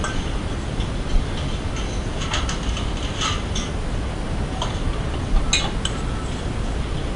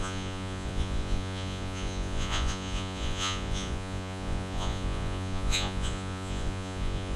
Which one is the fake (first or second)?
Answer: second